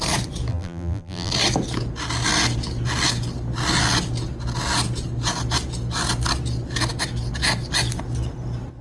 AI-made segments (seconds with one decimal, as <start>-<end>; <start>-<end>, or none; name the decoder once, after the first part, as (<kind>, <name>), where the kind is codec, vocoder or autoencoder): 0.5-1.3 (vocoder, BigVGAN v2)

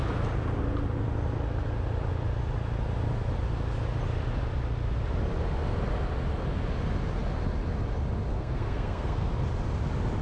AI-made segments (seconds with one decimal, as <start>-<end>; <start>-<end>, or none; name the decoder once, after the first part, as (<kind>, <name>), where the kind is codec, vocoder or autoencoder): 8.3-9.3 (codec, SNAC)

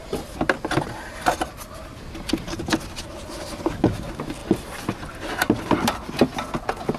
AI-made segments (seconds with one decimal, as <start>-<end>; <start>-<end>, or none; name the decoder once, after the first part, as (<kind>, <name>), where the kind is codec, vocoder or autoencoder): none

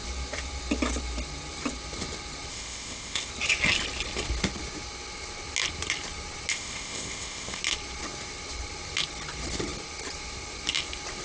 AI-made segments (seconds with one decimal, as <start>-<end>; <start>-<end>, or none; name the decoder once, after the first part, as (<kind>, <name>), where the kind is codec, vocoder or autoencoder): 2.5-3.3 (codec, ZipCodec); 6.5-7.6

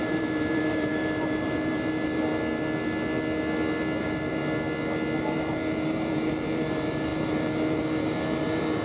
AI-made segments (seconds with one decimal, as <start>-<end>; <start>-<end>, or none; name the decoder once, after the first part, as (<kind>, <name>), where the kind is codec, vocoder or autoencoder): 0.0-2.3 (vocoder, BigVGAN v2); 4.0-4.4; 5.2-8.8

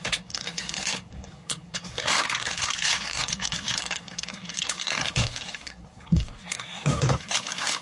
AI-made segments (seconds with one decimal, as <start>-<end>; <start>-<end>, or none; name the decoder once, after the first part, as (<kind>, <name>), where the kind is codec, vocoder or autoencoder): 0.0-7.8 (codec, SNAC)

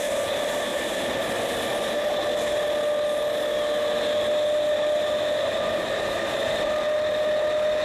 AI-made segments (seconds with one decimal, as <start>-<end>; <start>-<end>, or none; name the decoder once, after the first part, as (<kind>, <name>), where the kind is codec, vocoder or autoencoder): none